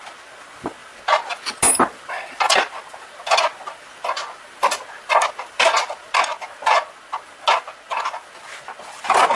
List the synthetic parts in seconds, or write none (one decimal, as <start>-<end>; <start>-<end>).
none